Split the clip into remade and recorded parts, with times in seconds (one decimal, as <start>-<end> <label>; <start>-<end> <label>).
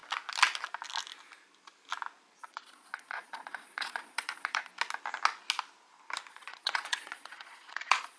0.0-2.4 recorded; 2.4-4.7 remade; 4.7-6.3 recorded; 6.3-8.2 remade